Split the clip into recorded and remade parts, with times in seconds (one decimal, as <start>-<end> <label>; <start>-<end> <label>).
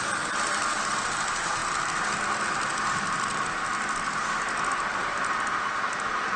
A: 0.0-6.4 recorded